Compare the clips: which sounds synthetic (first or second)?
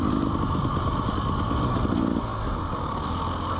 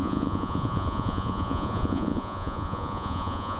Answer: second